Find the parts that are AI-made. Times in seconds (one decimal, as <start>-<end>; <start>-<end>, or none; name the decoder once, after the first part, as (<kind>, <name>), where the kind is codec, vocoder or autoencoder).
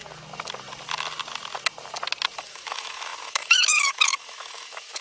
2.4-5.0 (autoencoder, DAC-VAE)